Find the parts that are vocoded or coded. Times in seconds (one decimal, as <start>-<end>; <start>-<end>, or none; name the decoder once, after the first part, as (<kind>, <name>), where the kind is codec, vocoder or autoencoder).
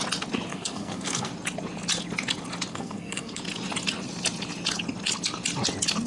0.5-1.3 (codec, SNAC); 2.7-3.4